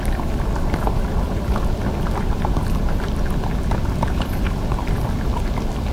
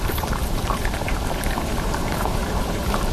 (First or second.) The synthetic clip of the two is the second